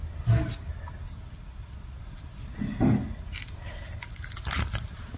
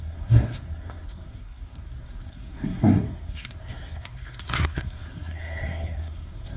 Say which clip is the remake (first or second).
second